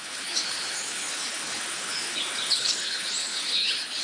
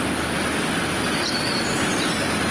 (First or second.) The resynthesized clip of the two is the first